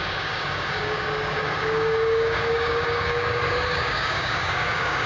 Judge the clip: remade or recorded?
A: remade